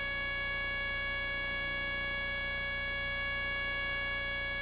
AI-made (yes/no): no